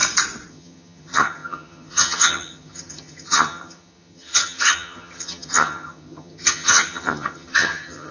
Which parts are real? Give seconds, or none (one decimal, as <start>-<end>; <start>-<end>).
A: 0.0-0.5